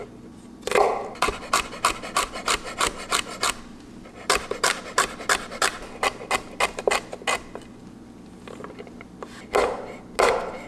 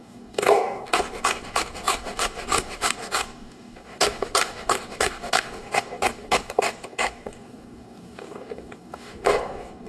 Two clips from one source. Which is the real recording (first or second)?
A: first